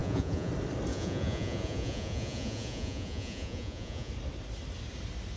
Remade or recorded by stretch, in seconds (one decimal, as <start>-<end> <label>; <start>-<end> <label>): 0.0-0.5 remade; 0.5-0.9 recorded; 0.9-4.1 remade; 4.1-5.4 recorded